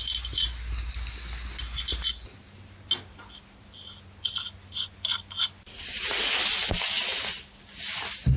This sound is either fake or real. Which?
real